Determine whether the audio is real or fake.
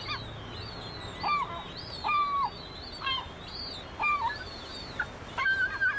real